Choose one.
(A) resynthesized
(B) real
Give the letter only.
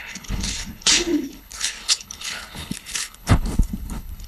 A